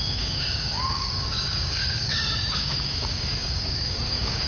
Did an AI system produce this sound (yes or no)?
yes